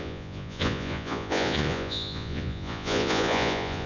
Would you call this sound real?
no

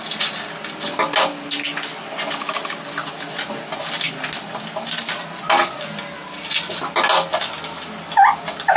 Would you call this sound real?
yes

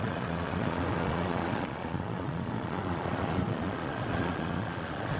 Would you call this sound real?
no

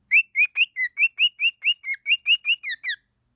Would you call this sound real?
yes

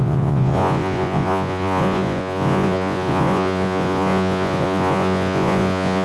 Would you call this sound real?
no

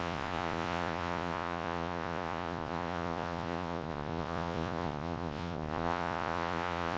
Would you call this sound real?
no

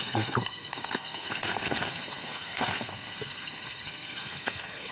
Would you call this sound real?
no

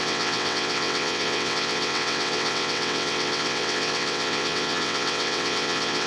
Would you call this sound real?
no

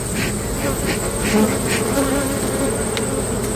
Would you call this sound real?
yes